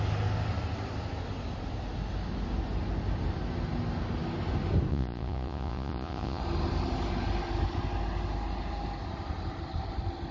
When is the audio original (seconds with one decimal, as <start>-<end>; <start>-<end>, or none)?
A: 0.0-4.9; 6.4-10.3